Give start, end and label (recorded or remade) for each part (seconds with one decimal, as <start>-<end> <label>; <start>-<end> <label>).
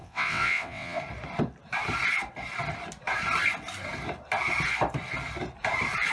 0.0-1.0 remade; 1.0-6.1 recorded